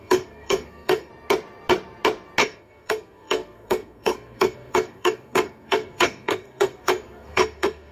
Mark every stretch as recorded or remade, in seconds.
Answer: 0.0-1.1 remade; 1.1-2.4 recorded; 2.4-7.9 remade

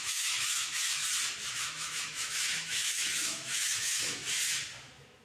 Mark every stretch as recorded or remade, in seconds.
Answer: 0.0-1.0 remade; 1.0-1.5 recorded; 1.5-4.2 remade; 4.2-5.2 recorded

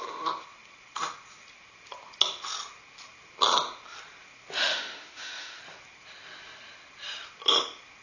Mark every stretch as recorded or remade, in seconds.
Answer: 0.0-4.6 recorded; 4.6-5.6 remade; 5.6-8.0 recorded

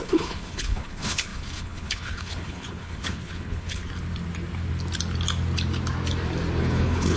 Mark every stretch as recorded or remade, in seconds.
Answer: 0.0-3.8 remade; 3.8-6.6 recorded; 6.6-7.2 remade